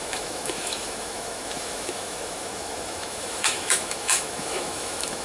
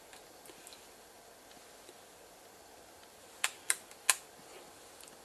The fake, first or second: first